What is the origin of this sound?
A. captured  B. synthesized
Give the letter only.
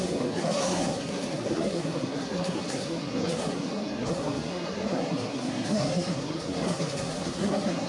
B